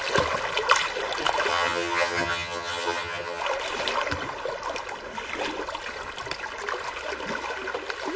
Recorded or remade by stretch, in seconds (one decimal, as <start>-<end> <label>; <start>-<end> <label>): 0.0-1.5 recorded; 1.5-3.4 remade; 3.4-8.2 recorded